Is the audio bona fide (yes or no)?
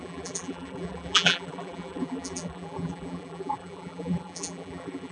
no